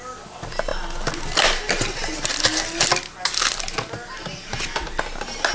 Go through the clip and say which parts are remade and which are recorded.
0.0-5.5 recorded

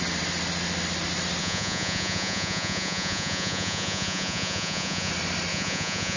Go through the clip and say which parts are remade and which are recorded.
0.0-1.4 recorded; 1.4-5.1 remade; 5.1-5.5 recorded; 5.5-6.2 remade

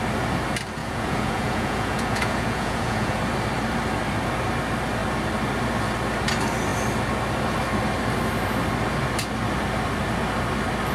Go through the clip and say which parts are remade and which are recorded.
0.0-0.8 recorded; 0.8-3.2 remade; 3.2-10.9 recorded

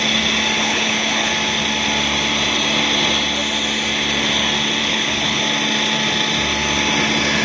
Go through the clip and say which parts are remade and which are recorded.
0.0-0.6 recorded; 0.6-1.3 remade; 1.3-4.8 recorded; 4.8-5.4 remade; 5.4-7.4 recorded